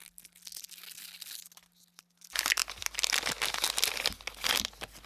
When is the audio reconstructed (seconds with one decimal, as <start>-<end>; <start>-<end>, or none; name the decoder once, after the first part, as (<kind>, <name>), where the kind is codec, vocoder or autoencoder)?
none